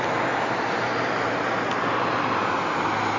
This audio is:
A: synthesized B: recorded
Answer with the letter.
B